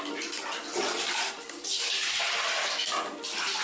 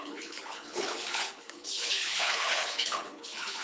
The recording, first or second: first